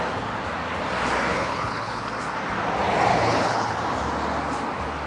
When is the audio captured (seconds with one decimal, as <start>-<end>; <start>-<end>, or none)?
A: 0.0-1.3; 2.0-3.1; 3.8-5.1